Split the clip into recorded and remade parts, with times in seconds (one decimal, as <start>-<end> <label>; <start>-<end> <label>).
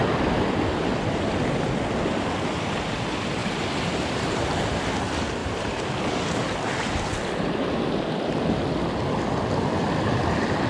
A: 0.0-3.4 recorded; 3.4-4.4 remade; 4.4-5.4 recorded; 5.4-5.9 remade; 5.9-10.7 recorded